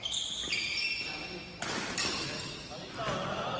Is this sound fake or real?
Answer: real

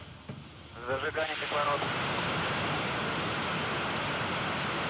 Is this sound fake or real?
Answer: real